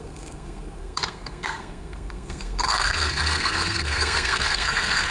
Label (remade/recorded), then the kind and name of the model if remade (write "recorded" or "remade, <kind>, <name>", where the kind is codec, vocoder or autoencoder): remade, codec, SNAC